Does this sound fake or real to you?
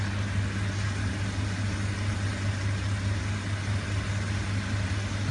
real